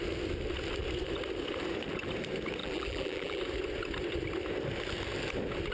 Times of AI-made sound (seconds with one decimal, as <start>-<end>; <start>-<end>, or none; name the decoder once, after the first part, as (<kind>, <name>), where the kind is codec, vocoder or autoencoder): 2.6-3.4 (vocoder, BigVGAN v2)